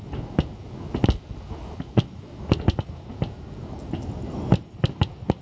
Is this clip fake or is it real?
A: real